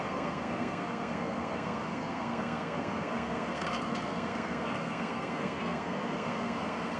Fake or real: fake